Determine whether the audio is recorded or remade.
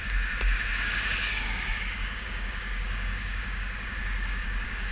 remade